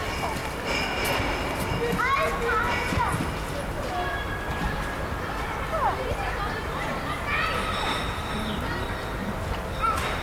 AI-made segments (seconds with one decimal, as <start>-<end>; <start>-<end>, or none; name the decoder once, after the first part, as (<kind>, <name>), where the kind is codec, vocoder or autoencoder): none